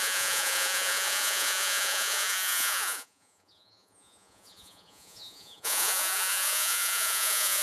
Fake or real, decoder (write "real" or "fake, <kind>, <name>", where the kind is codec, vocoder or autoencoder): fake, vocoder, Vocos